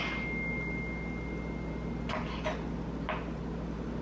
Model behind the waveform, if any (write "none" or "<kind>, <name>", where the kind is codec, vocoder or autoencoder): none